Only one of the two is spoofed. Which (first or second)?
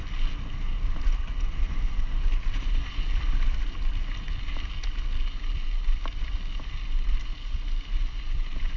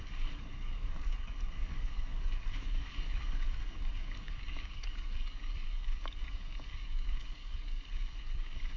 second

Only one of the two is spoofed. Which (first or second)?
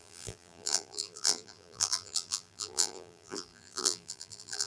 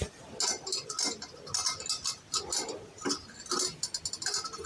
first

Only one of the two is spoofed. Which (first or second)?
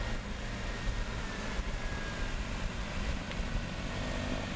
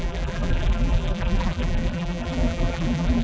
second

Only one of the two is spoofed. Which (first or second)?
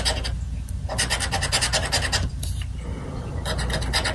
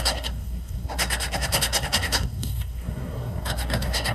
second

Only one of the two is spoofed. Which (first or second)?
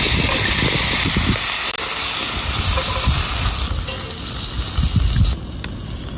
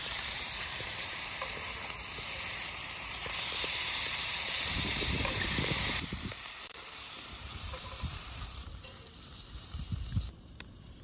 second